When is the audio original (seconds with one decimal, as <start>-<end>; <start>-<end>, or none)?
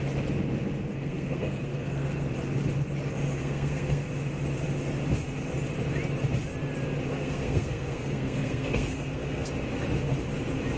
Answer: 0.0-0.9; 2.3-3.4; 4.1-7.1; 9.5-10.8